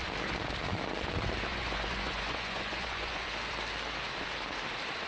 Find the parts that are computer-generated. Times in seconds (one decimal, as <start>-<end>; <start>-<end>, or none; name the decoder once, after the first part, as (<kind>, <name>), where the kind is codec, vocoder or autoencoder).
1.5-3.3 (vocoder, Vocos)